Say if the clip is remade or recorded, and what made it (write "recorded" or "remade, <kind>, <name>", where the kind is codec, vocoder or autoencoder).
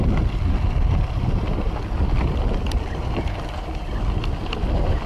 recorded